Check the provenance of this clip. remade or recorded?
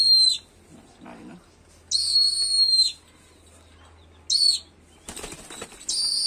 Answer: recorded